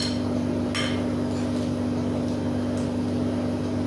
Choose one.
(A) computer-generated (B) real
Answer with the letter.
B